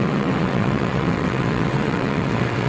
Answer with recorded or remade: remade